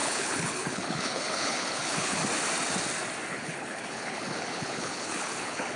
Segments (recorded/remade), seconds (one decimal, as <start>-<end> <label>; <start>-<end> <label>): 0.0-2.2 remade; 2.2-3.3 recorded; 3.3-5.8 remade